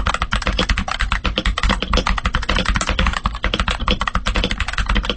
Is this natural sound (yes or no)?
yes